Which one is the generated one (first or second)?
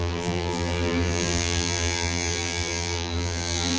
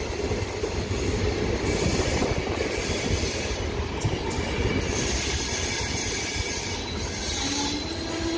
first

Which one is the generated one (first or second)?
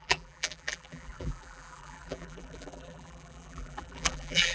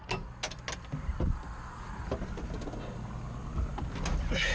first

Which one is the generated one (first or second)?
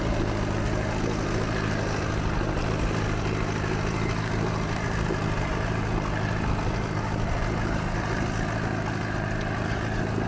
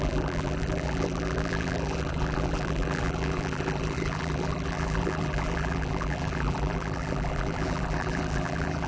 second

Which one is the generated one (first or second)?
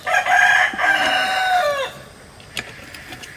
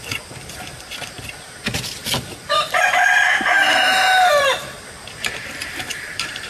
second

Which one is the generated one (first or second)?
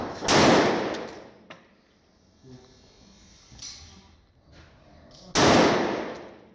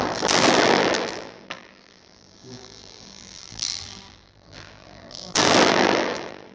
second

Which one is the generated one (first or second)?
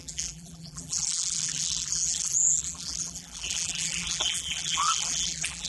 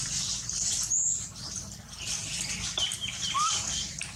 first